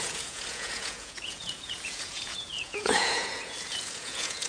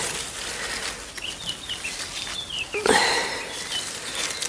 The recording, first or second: second